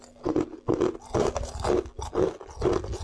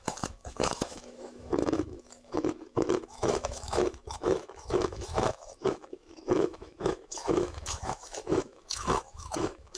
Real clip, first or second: first